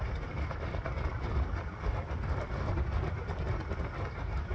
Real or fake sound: real